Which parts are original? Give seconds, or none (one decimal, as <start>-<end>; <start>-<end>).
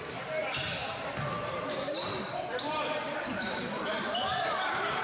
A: 0.0-2.1